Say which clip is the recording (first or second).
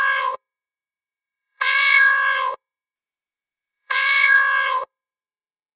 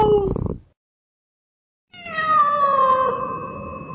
second